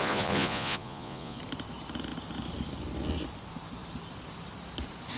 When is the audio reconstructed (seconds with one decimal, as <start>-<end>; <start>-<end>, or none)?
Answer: 0.0-1.4